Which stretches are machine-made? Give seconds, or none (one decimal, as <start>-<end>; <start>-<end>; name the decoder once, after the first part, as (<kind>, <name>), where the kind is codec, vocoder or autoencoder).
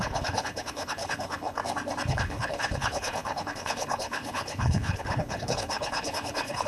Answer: 0.0-1.6 (codec, HILCodec); 2.1-6.7